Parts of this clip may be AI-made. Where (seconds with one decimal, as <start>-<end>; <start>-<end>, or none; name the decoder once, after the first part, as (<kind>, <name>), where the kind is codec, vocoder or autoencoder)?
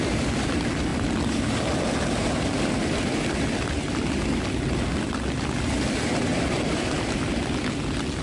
none